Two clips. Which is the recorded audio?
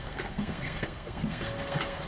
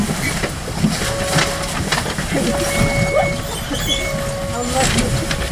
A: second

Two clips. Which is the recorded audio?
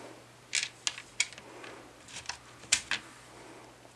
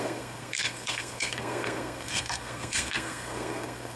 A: first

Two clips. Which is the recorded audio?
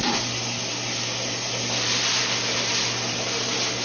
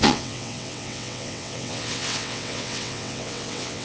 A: first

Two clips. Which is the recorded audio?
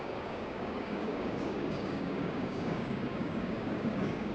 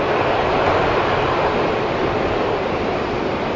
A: second